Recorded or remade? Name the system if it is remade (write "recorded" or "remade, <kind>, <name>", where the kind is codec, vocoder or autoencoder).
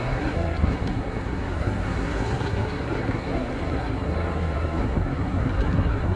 remade, codec, SNAC